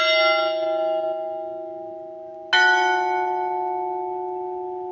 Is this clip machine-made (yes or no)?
no